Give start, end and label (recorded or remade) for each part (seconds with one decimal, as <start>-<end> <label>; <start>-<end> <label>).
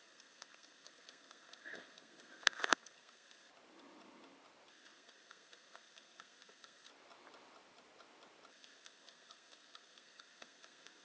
0.0-3.5 remade; 3.5-4.7 recorded; 4.7-6.9 remade; 6.9-8.5 recorded; 8.5-11.0 remade